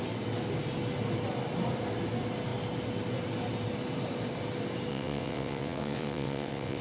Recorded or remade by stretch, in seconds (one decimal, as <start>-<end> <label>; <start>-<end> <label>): 0.0-4.9 recorded; 4.9-6.8 remade